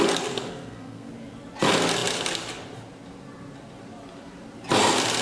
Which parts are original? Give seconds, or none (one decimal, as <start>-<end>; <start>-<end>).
0.0-0.5; 1.1-5.2